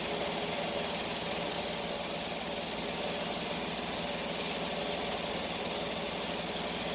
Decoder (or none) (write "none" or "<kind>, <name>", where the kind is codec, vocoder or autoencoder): none